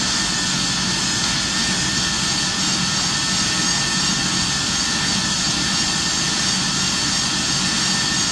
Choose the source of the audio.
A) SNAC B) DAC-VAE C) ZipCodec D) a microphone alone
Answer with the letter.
D